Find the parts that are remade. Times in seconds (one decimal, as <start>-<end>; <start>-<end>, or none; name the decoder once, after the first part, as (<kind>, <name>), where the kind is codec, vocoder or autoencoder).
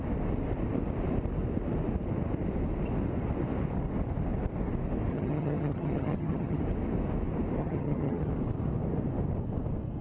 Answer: 5.1-6.6 (vocoder, HiFi-GAN); 7.6-8.3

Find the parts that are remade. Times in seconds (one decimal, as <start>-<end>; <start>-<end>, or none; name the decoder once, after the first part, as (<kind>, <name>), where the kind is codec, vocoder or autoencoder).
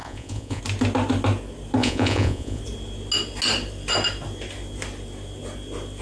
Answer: 0.0-0.6 (vocoder, Vocos); 1.8-2.6